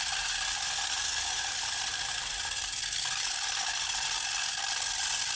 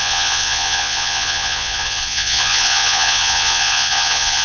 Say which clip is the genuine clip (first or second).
first